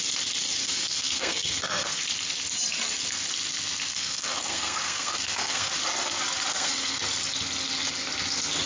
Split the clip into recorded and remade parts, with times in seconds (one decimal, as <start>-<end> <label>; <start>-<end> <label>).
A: 0.0-0.6 recorded; 0.6-2.0 remade; 2.0-3.9 recorded; 3.9-5.7 remade; 5.7-6.5 recorded; 6.5-7.0 remade; 7.0-8.7 recorded